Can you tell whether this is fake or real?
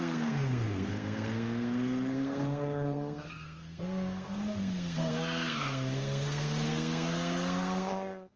fake